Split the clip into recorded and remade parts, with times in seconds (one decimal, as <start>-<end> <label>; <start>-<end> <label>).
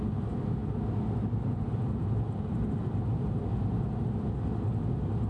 0.0-5.3 recorded